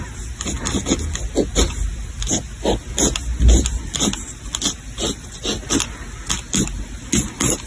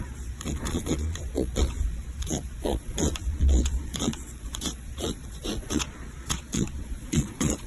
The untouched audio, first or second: first